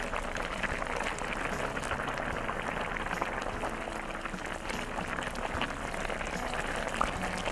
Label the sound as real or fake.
real